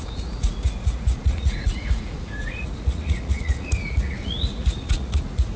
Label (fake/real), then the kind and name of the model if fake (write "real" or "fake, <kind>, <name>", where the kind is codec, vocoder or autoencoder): fake, vocoder, Vocos